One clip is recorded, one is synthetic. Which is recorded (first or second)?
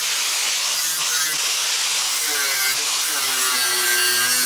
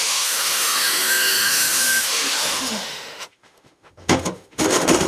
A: first